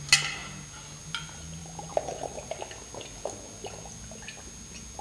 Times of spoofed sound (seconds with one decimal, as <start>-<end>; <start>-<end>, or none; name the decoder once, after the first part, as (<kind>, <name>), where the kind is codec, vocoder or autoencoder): none